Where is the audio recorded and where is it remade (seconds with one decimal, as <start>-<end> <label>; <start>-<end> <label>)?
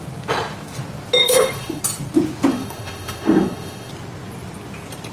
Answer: 0.0-1.2 recorded; 1.2-1.8 remade; 1.8-2.5 recorded; 2.5-3.9 remade; 3.9-5.1 recorded